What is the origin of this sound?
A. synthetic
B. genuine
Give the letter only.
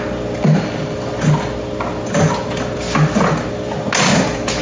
B